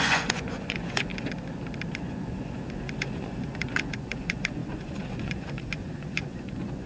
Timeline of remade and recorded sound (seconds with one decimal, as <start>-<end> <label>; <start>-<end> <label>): 0.0-1.1 remade; 1.1-1.9 recorded; 1.9-6.9 remade